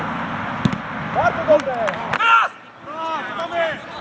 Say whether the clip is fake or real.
real